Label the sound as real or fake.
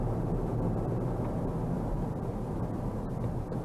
real